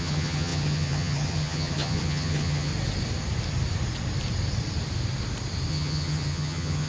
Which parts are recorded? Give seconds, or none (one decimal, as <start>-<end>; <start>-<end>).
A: 2.7-5.7